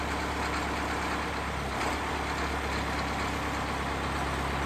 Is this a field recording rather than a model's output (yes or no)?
yes